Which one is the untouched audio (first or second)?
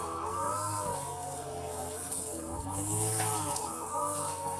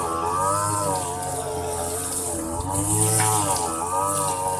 second